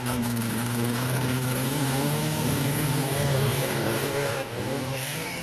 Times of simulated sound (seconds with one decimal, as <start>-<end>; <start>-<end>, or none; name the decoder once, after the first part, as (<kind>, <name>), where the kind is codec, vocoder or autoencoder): 0.0-5.4 (codec, DAC)